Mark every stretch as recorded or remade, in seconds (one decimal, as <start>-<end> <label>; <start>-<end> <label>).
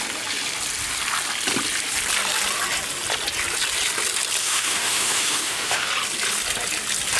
0.0-4.4 recorded; 4.4-5.9 remade; 5.9-7.2 recorded